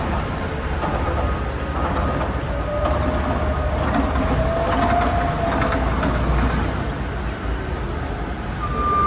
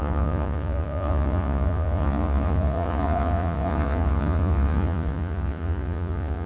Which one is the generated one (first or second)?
second